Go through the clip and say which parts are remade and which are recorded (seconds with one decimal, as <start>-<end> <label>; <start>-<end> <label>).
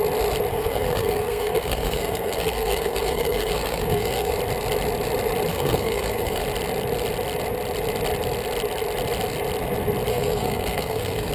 0.0-0.5 recorded; 0.5-4.3 remade; 4.3-5.5 recorded; 5.5-6.4 remade; 6.4-10.1 recorded; 10.1-11.3 remade